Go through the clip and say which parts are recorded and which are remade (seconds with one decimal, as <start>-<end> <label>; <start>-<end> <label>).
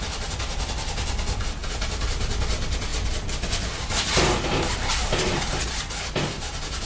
0.0-6.9 recorded